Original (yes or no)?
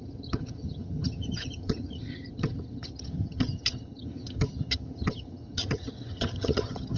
no